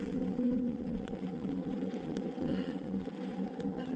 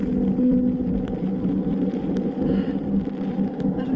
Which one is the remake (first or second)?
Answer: first